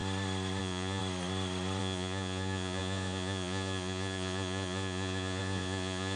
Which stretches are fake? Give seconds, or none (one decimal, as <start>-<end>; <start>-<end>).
0.6-1.0; 1.8-6.2

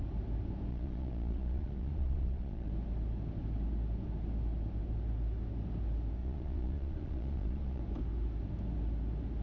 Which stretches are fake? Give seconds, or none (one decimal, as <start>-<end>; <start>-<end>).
0.7-2.7; 6.2-7.8

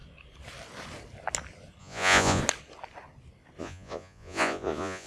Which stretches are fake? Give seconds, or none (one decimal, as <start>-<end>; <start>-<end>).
1.8-2.4; 3.6-5.1

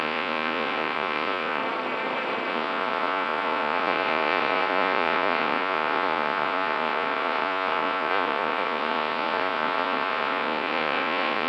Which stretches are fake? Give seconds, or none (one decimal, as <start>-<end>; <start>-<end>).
0.0-1.6; 2.5-11.5